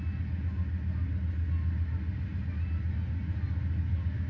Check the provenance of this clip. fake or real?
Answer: real